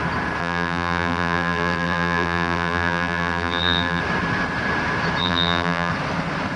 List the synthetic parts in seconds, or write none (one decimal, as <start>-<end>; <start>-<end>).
0.4-4.0; 5.2-5.9

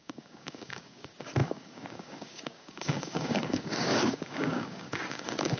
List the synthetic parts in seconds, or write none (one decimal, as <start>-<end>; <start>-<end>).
0.0-5.6

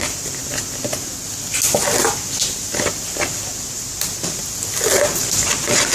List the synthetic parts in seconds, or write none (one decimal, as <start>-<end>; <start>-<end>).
0.0-0.4; 3.8-4.4; 5.1-5.9

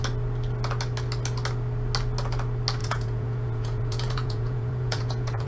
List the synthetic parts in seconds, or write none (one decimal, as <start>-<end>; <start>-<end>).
2.8-5.5

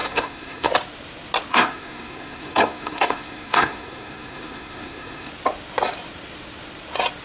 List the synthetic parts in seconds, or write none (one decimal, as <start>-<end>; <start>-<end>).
0.0-0.7; 1.5-5.3

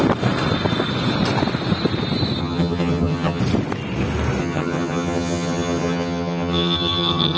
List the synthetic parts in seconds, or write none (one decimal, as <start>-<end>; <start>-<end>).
2.4-3.4; 4.4-7.4

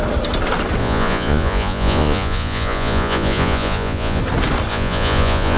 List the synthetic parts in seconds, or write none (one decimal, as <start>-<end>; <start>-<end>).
0.8-4.2; 4.7-5.6

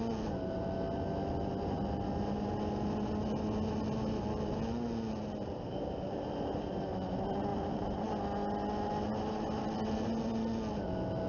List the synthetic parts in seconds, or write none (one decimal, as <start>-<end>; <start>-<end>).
none